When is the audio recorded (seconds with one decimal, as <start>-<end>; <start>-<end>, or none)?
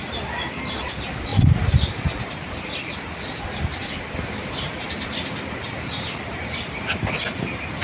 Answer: 0.0-7.8